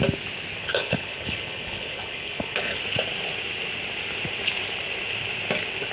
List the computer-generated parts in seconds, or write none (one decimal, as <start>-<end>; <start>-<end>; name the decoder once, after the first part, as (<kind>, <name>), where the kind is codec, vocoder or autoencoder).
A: 0.6-2.8 (codec, HILCodec)